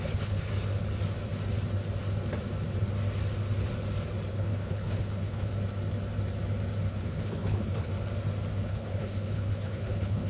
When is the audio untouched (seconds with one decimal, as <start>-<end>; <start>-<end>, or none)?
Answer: 0.5-4.3; 5.5-6.9; 7.9-8.5